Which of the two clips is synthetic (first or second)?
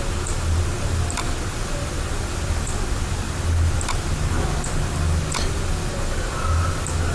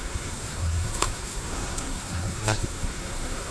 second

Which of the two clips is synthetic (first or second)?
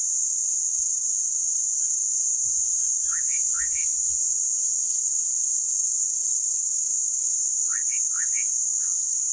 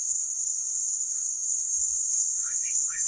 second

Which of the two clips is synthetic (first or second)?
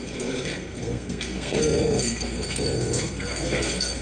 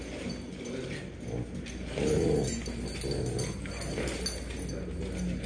first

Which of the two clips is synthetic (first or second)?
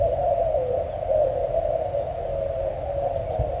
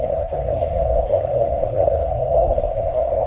second